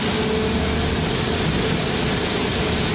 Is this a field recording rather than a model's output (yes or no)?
yes